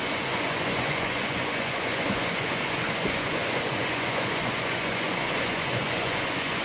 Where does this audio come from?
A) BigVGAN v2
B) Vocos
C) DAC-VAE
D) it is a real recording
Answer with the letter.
B